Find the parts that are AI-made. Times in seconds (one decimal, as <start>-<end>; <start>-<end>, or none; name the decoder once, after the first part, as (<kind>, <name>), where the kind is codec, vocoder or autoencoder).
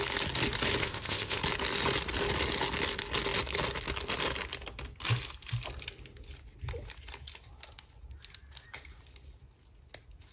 0.8-1.4 (codec, ZipCodec)